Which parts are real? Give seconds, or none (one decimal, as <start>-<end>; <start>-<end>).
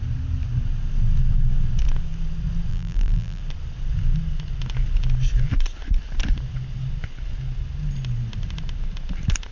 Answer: 0.0-2.7; 3.4-9.5